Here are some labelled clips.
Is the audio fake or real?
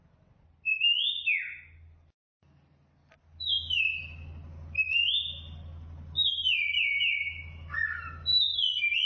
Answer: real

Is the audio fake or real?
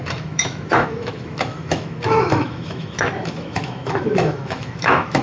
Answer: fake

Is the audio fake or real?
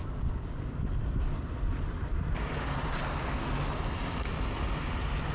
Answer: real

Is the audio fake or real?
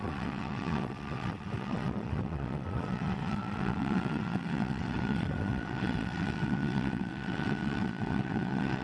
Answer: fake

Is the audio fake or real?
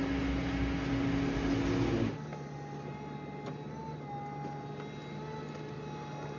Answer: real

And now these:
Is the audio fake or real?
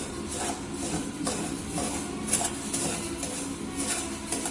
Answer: real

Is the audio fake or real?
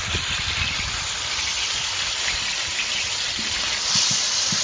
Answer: real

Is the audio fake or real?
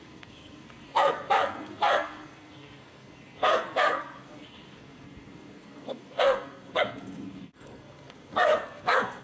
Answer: fake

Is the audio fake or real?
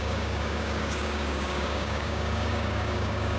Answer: fake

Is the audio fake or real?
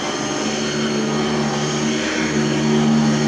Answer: real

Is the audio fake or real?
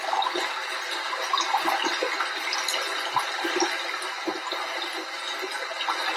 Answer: real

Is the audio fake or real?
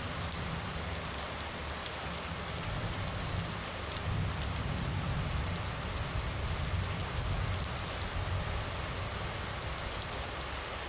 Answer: real